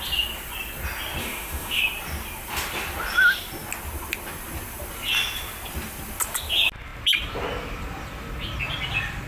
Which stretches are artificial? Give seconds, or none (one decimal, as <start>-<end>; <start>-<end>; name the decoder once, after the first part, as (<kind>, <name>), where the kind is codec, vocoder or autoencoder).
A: 1.2-1.8 (autoencoder, DAC-VAE)

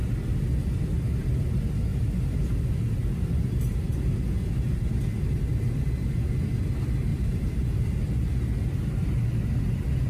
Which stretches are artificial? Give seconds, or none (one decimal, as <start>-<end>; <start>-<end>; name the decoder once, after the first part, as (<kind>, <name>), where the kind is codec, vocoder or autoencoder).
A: 1.9-2.6 (vocoder, BigVGAN v2); 7.1-7.7

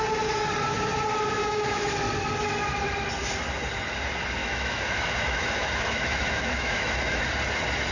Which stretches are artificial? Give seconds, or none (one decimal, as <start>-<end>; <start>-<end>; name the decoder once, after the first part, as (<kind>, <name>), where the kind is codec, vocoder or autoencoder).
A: 1.4-1.9 (autoencoder, DAC-VAE); 4.4-7.2

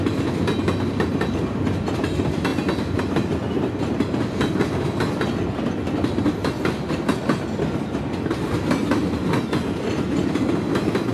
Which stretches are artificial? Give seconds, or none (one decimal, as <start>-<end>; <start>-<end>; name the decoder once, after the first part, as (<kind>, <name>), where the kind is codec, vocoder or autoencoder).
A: none

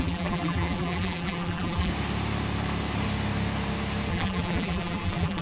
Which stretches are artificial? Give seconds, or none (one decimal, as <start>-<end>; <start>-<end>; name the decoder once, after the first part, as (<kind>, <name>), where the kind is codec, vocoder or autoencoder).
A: 0.0-1.9 (vocoder, BigVGAN v2); 4.1-5.4

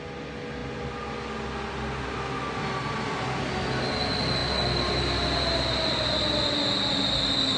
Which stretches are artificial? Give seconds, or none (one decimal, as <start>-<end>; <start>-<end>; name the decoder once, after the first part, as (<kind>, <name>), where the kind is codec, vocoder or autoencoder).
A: none

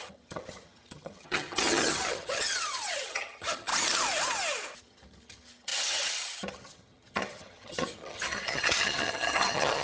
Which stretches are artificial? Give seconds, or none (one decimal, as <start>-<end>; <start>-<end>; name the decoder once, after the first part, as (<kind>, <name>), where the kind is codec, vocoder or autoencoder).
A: 0.0-3.7 (vocoder, HiFi-GAN); 4.8-9.8

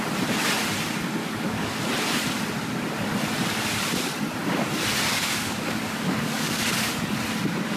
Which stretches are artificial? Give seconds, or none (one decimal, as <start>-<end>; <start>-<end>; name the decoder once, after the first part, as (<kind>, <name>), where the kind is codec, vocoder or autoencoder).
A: 1.2-1.8 (codec, DAC); 5.1-6.9